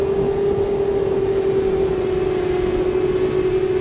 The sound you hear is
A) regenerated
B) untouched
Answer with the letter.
B